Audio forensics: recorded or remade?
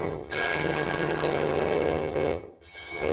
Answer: remade